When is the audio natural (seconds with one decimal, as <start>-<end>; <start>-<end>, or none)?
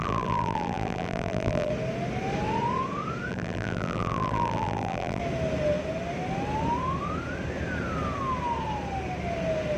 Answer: 1.7-3.3; 5.2-9.8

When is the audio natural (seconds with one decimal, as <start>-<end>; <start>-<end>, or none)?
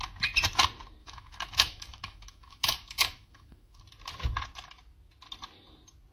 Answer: 0.0-1.0; 3.8-6.1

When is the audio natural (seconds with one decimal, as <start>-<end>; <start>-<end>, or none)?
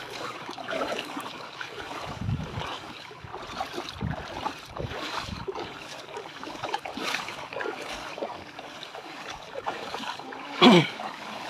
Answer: 3.3-4.7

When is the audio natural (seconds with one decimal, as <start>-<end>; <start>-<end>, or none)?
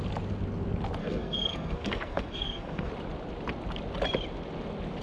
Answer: 0.0-1.0; 2.9-5.0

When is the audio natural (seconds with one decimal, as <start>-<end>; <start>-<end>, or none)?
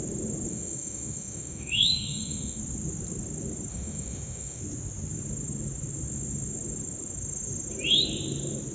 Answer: 0.0-0.5; 2.6-3.7; 4.6-8.7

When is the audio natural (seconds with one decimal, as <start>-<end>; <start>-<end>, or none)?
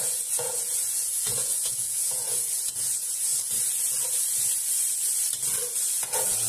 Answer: 3.3-5.9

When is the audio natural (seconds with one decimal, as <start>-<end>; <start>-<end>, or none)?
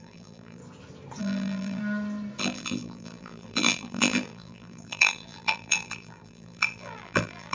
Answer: 0.6-1.2; 1.8-2.4